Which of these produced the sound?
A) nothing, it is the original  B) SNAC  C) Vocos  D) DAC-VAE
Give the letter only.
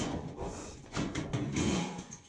C